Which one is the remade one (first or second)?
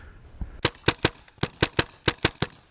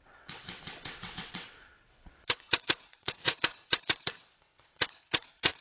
second